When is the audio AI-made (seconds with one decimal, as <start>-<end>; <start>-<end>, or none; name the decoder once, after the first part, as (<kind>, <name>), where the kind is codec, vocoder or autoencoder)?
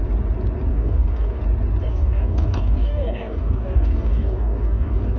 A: 0.7-1.4 (codec, DAC); 1.9-5.2